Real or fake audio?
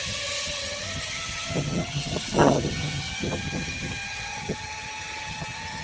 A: fake